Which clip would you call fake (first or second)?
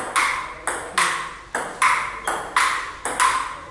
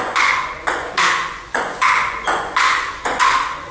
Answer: second